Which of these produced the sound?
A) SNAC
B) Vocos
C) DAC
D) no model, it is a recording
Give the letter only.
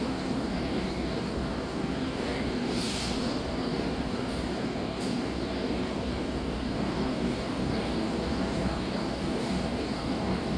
C